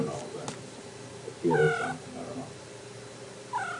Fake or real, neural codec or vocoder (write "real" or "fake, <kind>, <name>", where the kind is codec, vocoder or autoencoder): real